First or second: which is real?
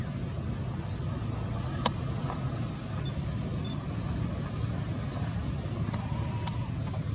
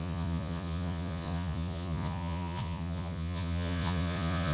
first